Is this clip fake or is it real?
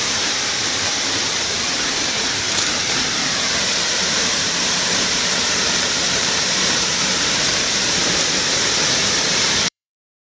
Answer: fake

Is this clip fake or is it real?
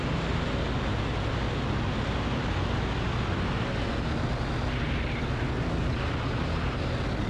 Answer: real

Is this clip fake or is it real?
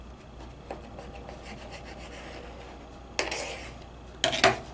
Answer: real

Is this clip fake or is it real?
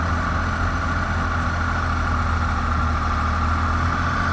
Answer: real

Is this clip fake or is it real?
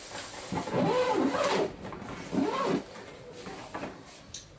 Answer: real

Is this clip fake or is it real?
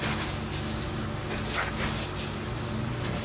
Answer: real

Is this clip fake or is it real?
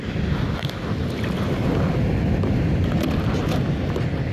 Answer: real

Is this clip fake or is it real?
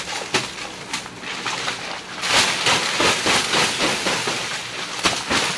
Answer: real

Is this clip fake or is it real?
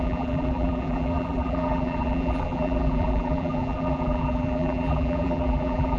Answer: fake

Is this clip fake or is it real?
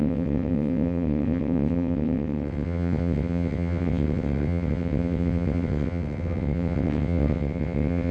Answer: fake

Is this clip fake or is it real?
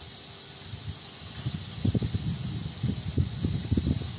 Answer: real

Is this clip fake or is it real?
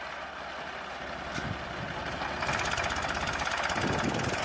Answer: fake